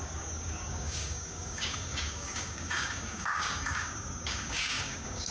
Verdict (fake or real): fake